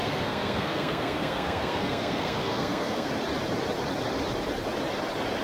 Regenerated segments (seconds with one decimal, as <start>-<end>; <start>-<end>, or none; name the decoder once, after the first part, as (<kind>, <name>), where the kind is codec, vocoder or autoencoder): 0.0-3.1 (codec, SNAC)